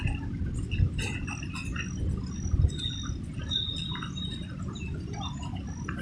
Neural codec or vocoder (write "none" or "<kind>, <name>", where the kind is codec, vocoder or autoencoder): none